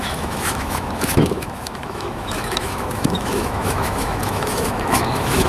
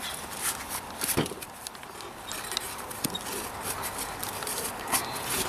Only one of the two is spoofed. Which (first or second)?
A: first